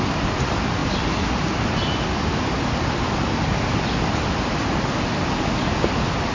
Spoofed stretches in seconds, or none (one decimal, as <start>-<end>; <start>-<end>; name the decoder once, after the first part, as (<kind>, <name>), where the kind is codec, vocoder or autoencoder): none